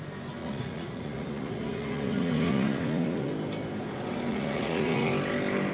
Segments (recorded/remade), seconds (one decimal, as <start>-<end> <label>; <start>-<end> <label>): 0.0-0.4 recorded; 0.4-3.3 remade; 3.3-4.3 recorded; 4.3-5.1 remade; 5.1-5.7 recorded